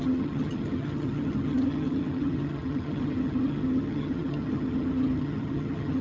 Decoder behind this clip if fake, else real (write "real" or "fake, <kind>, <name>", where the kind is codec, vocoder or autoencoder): fake, vocoder, HiFi-GAN